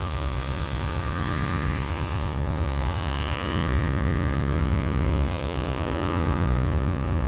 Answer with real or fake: fake